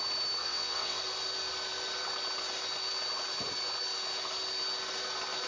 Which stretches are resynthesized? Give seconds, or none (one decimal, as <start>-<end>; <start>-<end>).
0.4-1.0